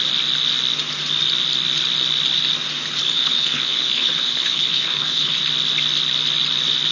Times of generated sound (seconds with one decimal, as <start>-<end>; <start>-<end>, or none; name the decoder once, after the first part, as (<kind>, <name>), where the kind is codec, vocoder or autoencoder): 3.0-5.4 (codec, HILCodec)

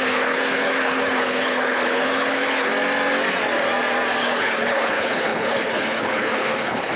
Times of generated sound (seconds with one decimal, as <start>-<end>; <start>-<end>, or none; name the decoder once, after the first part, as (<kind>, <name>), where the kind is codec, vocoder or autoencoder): 0.0-2.7 (codec, HILCodec); 4.2-7.0

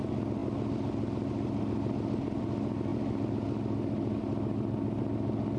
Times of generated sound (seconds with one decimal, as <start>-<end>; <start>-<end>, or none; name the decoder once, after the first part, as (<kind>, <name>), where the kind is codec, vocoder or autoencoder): none

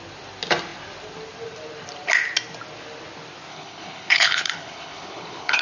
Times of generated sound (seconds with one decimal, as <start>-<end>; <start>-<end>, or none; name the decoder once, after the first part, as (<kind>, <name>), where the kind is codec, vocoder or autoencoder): 3.5-5.6 (codec, HILCodec)

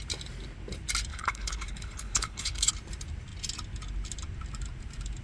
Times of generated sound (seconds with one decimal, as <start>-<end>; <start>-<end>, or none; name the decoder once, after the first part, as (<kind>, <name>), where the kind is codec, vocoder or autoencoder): 1.1-2.7 (codec, HILCodec)

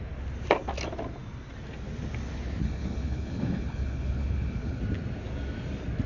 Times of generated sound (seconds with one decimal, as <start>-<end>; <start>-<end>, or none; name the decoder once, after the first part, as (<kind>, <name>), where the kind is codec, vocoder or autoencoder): 2.6-4.8 (codec, HILCodec)